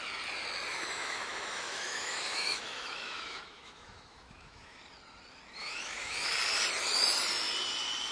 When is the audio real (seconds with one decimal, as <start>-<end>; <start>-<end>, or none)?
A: 0.0-0.7; 4.8-5.6; 6.3-8.1